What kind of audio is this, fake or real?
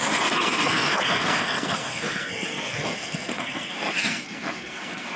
fake